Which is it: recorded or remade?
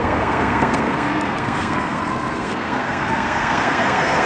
remade